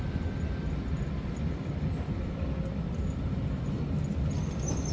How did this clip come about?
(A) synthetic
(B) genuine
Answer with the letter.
B